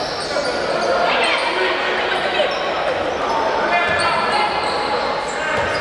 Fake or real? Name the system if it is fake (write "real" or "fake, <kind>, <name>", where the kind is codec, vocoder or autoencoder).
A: real